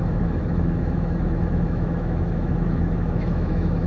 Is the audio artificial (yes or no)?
yes